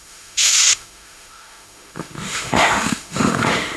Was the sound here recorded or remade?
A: remade